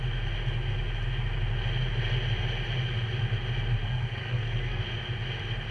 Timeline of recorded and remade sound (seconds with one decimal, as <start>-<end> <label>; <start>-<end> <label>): 0.0-3.8 recorded; 3.8-4.8 remade; 4.8-5.7 recorded